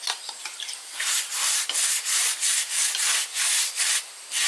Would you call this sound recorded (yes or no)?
yes